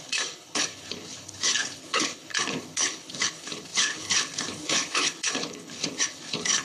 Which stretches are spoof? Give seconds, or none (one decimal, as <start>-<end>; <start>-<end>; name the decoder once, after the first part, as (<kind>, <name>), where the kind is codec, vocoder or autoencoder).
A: 0.0-6.6 (codec, HILCodec)